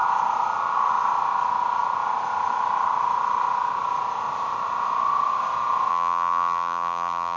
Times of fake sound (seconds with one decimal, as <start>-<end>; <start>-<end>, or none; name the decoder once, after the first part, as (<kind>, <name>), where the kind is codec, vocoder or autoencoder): 5.9-7.4 (vocoder, BigVGAN v2)